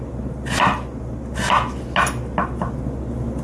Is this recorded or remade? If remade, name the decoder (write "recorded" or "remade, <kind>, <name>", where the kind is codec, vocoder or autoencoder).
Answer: recorded